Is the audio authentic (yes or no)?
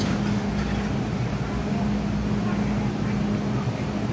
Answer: yes